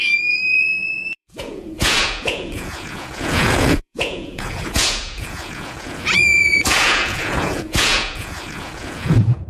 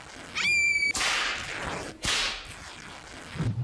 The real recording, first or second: second